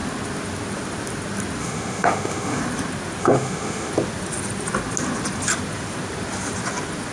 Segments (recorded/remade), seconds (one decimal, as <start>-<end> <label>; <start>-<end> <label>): 0.0-1.6 recorded; 1.6-2.6 remade; 2.6-3.2 recorded; 3.2-3.9 remade; 3.9-7.1 recorded